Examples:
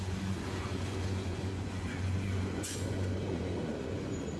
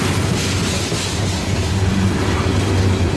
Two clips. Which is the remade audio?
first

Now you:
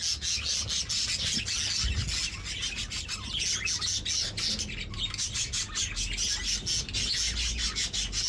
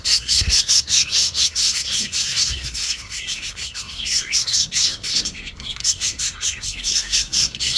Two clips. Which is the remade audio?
second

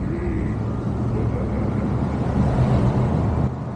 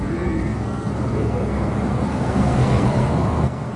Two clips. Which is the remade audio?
second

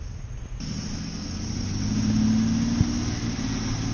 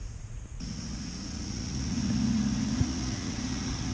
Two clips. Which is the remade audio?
second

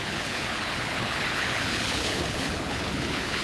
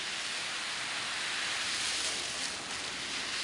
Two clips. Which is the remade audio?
first